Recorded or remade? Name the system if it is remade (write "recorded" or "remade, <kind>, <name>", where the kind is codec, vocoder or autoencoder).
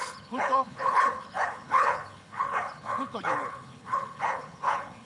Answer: remade, codec, HILCodec